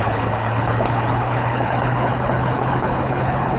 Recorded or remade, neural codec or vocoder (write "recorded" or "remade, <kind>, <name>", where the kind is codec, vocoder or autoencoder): remade, codec, HILCodec